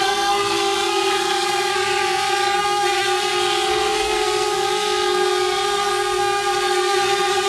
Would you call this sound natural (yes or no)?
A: no